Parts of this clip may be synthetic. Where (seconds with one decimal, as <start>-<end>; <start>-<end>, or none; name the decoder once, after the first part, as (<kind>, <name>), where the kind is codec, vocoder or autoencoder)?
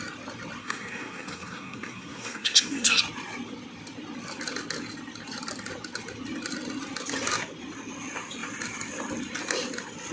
0.6-3.0 (codec, SNAC)